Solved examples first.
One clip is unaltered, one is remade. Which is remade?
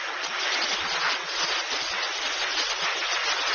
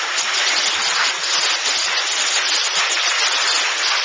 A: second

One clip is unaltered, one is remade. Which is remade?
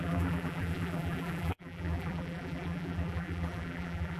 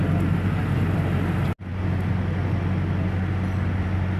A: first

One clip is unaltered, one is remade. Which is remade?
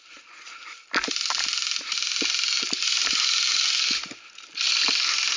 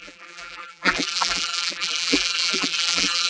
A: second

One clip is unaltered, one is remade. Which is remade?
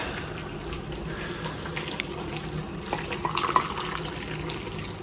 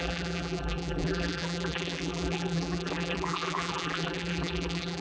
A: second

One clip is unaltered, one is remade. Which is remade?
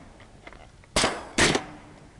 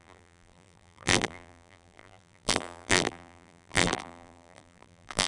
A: second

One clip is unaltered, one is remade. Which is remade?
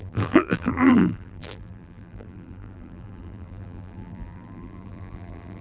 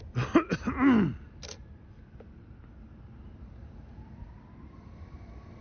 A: first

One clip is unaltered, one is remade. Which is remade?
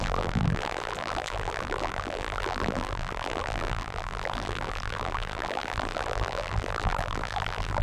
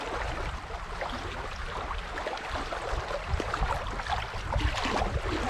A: first